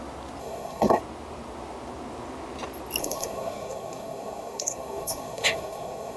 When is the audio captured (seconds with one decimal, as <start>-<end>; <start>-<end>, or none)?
0.0-0.4; 1.0-3.0